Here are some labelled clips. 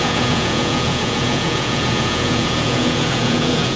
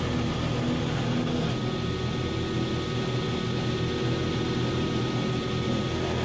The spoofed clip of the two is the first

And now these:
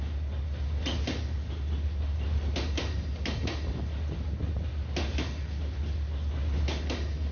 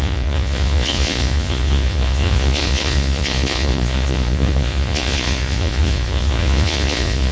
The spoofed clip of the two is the second